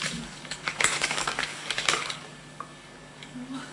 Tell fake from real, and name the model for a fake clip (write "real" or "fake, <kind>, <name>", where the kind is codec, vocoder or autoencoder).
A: fake, codec, DAC